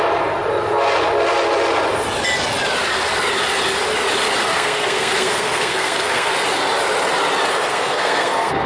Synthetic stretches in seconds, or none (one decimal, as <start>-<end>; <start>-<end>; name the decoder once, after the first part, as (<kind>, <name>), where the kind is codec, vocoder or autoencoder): 4.5-6.3 (codec, SNAC); 7.7-8.7